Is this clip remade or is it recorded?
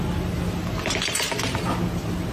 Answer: recorded